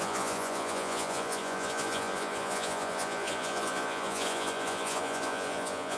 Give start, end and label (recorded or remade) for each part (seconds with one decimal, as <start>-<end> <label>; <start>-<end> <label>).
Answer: 0.0-6.0 remade